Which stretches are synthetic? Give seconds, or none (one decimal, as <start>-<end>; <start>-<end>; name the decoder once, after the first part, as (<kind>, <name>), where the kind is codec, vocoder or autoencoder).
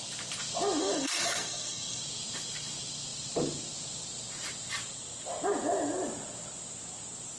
0.8-2.0 (codec, SNAC)